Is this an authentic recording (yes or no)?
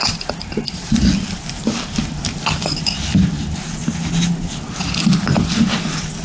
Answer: yes